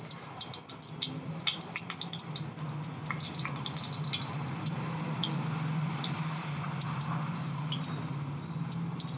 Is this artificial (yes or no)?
no